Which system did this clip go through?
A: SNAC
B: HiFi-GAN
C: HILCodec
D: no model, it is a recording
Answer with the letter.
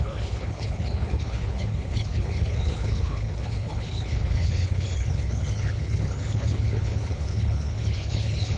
C